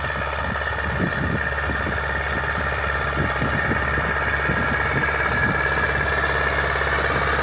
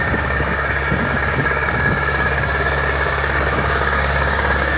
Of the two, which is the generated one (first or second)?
second